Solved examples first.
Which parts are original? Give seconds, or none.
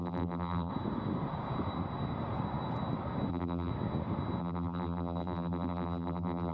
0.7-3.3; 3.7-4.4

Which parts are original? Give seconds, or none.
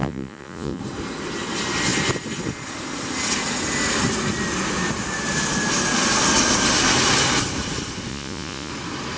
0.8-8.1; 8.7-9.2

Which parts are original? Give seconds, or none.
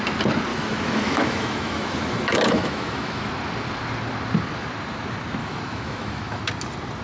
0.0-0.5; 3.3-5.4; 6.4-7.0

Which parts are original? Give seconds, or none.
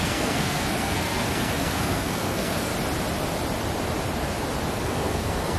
2.7-4.7